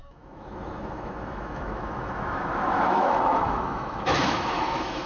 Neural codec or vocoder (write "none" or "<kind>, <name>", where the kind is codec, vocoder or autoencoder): autoencoder, DAC-VAE